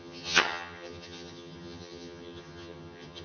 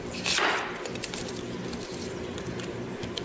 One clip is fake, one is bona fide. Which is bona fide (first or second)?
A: second